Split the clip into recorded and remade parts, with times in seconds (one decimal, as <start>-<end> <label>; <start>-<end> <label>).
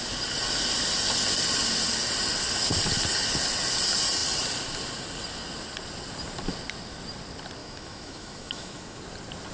0.0-7.6 recorded; 7.6-9.0 remade; 9.0-9.5 recorded